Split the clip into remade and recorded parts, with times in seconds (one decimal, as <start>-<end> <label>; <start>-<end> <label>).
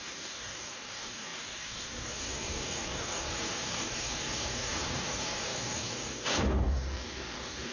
0.0-7.7 remade